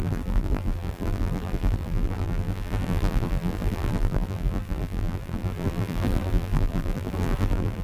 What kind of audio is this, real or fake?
fake